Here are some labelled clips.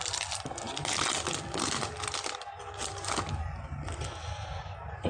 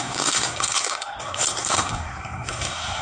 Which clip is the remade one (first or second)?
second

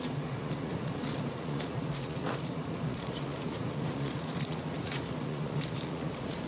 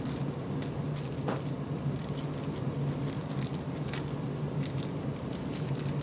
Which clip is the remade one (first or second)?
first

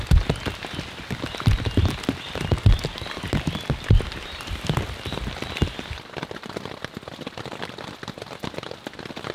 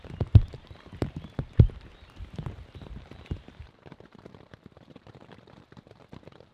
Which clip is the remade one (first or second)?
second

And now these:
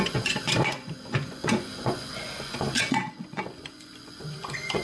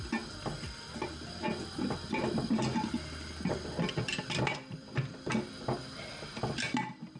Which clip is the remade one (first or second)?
first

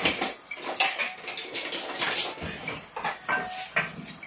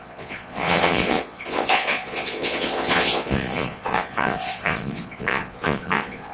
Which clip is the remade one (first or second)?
second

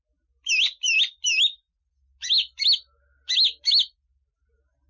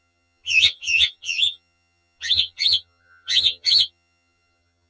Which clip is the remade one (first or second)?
second